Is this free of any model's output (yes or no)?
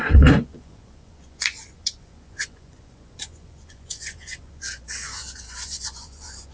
no